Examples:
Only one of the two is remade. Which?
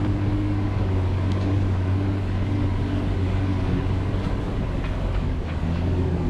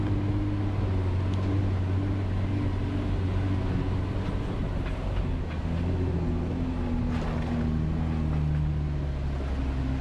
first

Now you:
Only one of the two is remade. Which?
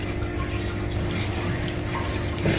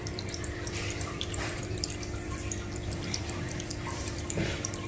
second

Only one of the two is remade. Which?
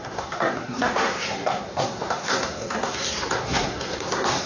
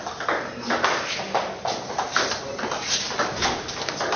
first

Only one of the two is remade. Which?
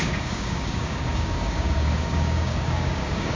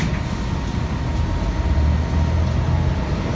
first